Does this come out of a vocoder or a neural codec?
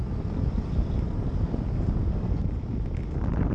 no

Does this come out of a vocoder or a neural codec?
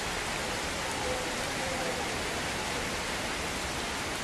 no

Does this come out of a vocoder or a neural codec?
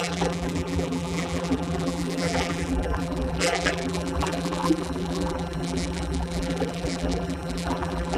yes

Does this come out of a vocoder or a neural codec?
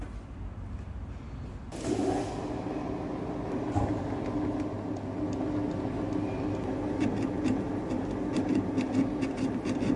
no